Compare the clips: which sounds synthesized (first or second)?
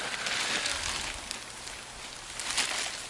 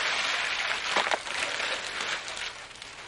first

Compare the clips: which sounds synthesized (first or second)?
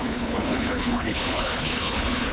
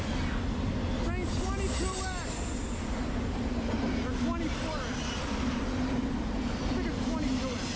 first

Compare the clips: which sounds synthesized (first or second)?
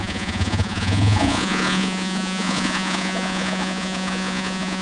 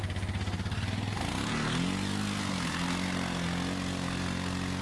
first